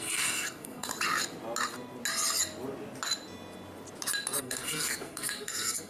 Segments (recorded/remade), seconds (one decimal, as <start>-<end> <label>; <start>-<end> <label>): 0.0-0.9 remade; 0.9-4.4 recorded; 4.4-5.9 remade